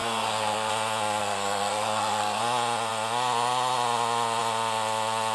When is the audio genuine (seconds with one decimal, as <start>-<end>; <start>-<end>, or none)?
0.7-1.2; 2.4-5.3